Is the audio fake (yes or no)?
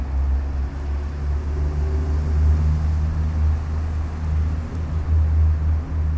no